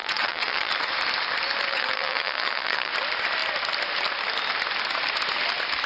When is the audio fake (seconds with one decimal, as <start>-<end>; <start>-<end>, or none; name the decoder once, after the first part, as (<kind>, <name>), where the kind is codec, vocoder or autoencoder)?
0.0-0.7 (vocoder, WaveNeXt); 1.7-2.9